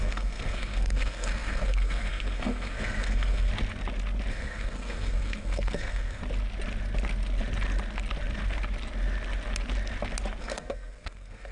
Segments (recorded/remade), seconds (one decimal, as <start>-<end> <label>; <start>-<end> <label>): 0.0-3.5 remade; 3.5-4.3 recorded; 4.3-6.2 remade; 6.2-10.4 recorded; 10.4-11.5 remade